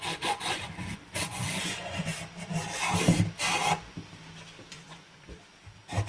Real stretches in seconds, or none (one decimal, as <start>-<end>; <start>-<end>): 2.1-4.7; 5.5-6.1